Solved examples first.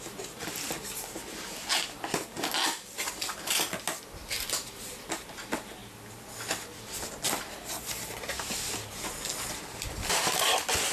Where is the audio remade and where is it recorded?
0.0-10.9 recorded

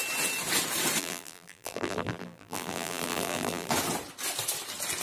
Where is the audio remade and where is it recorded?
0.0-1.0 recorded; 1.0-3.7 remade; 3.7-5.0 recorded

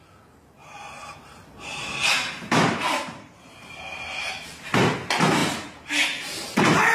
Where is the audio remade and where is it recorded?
0.0-0.6 recorded; 0.6-4.1 remade; 4.1-5.4 recorded; 5.4-6.9 remade

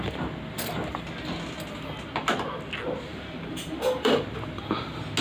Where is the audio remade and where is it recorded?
0.0-3.1 recorded; 3.1-4.2 remade; 4.2-5.2 recorded